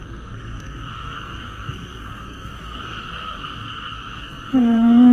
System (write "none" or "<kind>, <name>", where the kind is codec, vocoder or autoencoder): codec, SNAC